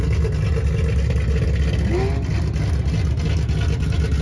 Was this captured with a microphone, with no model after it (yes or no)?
yes